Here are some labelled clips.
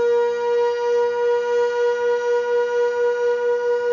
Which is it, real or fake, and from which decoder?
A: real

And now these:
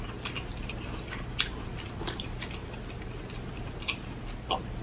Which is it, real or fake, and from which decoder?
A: real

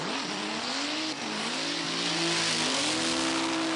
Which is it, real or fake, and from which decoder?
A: real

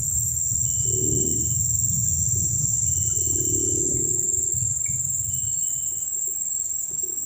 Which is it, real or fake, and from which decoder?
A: real